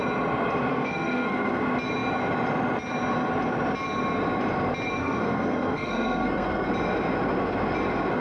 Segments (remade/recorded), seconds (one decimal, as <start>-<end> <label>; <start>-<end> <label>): 0.0-0.7 recorded; 0.7-1.6 remade; 1.6-5.0 recorded; 5.0-6.7 remade; 6.7-8.2 recorded